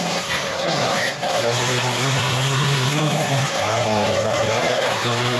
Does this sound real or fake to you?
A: fake